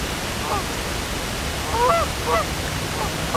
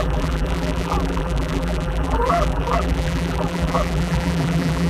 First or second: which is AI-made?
second